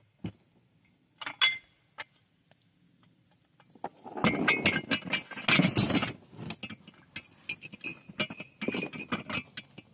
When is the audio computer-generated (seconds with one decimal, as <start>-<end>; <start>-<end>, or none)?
none